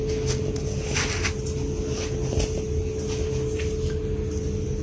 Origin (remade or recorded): recorded